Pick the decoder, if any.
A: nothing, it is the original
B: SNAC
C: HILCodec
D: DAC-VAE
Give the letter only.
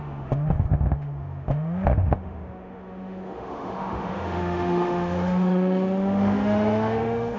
D